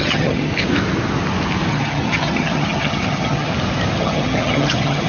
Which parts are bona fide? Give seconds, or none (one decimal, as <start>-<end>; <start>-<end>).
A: 0.5-1.7; 3.5-4.0